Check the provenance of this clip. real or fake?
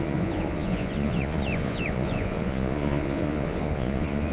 fake